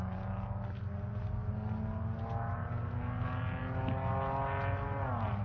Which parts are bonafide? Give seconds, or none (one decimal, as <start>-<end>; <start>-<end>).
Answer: 0.0-5.4